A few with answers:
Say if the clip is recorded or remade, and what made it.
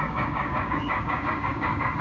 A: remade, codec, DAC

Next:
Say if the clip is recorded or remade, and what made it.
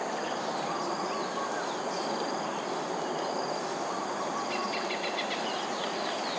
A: recorded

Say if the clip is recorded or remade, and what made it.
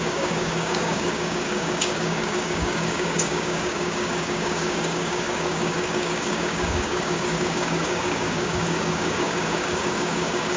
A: remade, codec, DAC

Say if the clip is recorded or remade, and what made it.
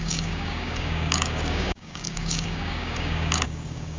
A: remade, codec, DAC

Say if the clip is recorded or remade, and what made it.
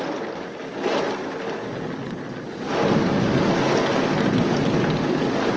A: recorded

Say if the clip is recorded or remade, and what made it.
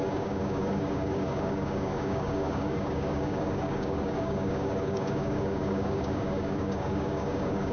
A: remade, codec, DAC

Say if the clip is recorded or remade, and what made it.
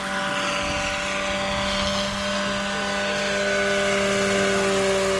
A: recorded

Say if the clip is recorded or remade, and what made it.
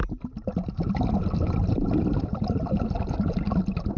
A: recorded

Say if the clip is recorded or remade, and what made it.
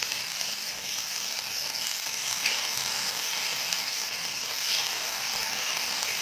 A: remade, codec, DAC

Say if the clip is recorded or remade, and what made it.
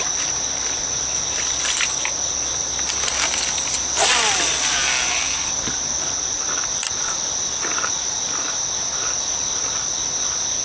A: recorded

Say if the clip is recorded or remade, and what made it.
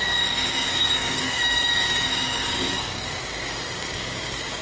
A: remade, codec, DAC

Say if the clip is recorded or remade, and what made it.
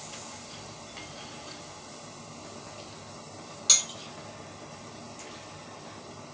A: recorded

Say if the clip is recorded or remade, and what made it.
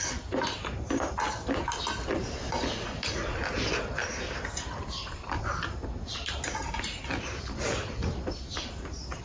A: recorded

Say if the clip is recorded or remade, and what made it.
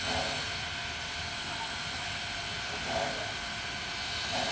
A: recorded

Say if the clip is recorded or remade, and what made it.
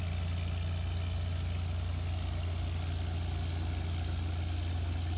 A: recorded